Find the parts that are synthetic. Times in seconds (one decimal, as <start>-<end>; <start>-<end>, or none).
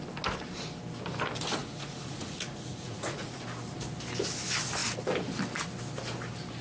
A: 1.6-3.4